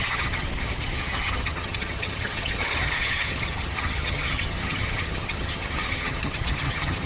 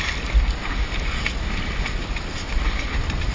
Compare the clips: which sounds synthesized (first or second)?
first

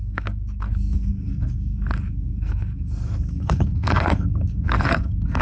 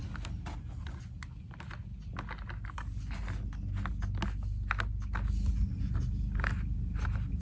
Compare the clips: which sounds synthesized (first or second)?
first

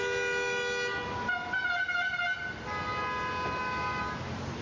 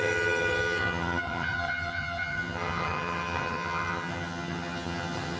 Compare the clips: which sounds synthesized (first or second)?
second